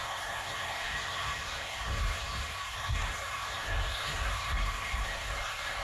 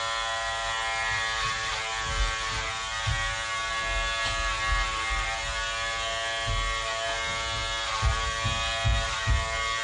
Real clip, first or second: second